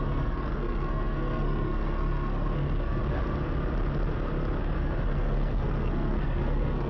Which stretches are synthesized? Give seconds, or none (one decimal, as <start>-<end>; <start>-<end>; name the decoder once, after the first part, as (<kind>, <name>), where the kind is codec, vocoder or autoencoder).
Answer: 0.0-3.0 (codec, SNAC); 4.6-6.9